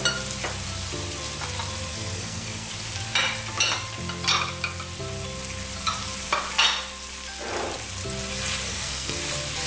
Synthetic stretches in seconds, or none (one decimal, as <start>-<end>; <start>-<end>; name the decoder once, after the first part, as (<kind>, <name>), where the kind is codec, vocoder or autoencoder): 1.9-2.7 (codec, SNAC); 8.7-9.2